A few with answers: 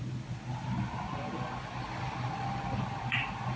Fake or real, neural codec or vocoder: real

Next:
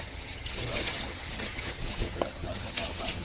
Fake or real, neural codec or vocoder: fake, vocoder, HiFi-GAN